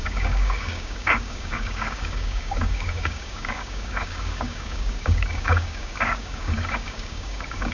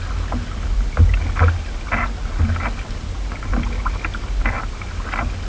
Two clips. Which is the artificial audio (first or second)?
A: first